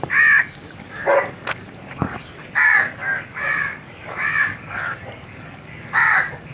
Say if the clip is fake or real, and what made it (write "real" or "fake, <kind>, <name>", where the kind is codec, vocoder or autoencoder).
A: fake, codec, DAC